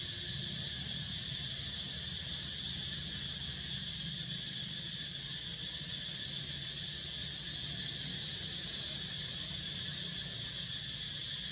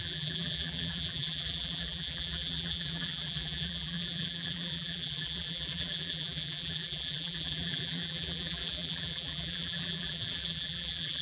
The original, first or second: first